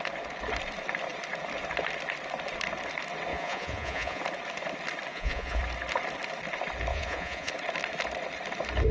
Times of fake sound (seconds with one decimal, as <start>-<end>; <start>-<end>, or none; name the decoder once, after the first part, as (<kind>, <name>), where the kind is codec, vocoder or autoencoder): 3.3-4.2 (vocoder, Vocos); 5.1-5.6; 6.9-7.5